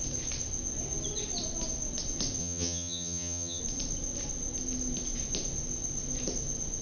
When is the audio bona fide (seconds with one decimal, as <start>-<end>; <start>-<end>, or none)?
0.0-2.4; 3.6-6.8